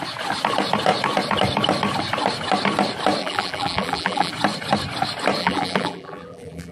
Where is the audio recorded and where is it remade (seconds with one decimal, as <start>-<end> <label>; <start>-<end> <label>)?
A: 0.0-3.2 recorded; 3.2-4.3 remade; 4.3-5.4 recorded; 5.4-6.7 remade